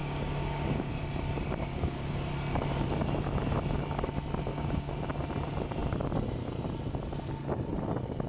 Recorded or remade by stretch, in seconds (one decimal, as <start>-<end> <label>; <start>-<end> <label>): 0.0-0.9 remade; 0.9-1.7 recorded; 1.7-2.3 remade; 2.3-4.5 recorded; 4.5-5.0 remade; 5.0-8.3 recorded